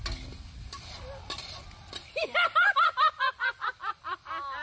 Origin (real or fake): real